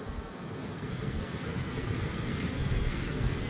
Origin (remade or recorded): remade